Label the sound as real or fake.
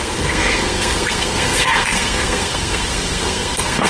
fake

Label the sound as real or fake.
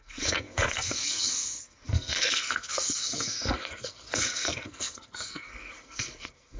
fake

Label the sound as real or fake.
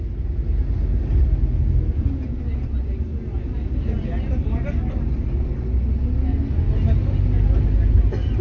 real